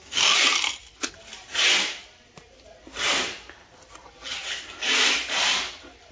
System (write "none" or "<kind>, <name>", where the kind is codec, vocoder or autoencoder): none